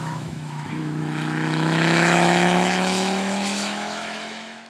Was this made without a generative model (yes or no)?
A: no